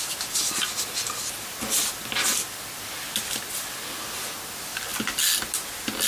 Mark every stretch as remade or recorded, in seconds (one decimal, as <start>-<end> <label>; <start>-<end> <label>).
0.0-6.1 recorded